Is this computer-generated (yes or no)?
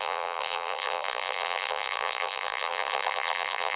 yes